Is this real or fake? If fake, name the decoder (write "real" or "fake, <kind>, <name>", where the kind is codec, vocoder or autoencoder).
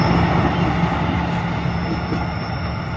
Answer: real